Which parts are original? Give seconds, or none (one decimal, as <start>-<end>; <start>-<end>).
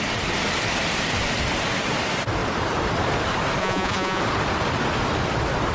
0.0-3.6; 4.2-5.7